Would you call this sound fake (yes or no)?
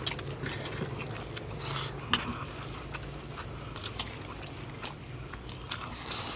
no